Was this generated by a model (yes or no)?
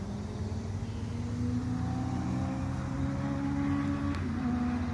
no